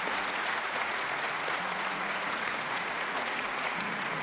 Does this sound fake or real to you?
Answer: fake